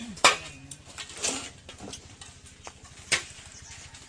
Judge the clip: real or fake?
real